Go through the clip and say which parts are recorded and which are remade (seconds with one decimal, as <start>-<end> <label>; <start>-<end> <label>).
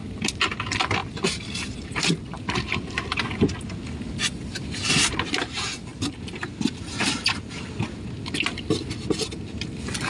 0.0-1.0 recorded; 1.0-3.1 remade; 3.1-4.5 recorded; 4.5-5.3 remade; 5.3-5.9 recorded; 5.9-6.5 remade; 6.5-10.1 recorded